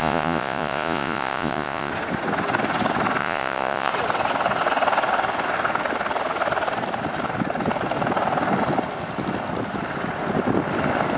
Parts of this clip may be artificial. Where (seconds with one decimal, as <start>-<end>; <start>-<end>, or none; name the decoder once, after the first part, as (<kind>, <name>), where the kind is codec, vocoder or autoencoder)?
0.0-1.9 (vocoder, Vocos); 3.2-3.9

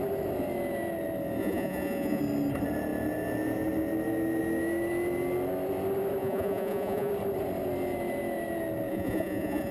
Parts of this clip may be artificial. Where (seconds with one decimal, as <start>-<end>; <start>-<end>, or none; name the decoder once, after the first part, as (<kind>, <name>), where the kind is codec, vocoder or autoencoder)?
1.4-2.2 (vocoder, Vocos); 6.2-7.1; 8.9-9.7